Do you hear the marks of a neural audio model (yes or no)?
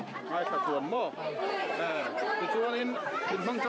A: yes